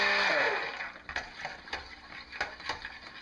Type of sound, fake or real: real